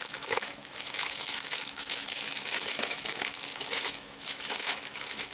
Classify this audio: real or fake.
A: fake